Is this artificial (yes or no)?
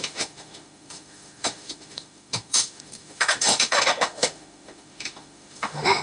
yes